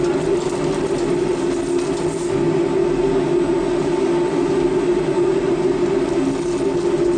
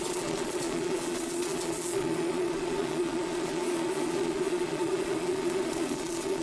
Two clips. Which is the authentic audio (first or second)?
first